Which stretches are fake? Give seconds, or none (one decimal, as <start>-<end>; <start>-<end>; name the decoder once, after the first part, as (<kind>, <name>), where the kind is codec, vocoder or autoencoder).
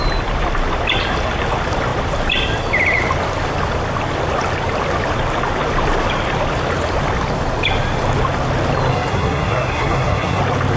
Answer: 8.9-10.4 (codec, SNAC)